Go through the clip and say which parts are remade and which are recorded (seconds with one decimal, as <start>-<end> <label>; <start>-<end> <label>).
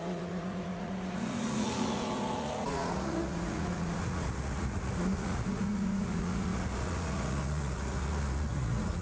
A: 0.0-9.0 remade